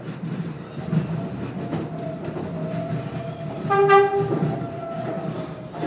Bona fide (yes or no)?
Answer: yes